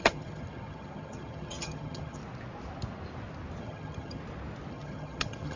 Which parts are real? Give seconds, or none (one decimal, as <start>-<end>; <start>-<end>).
2.2-3.6; 4.2-4.7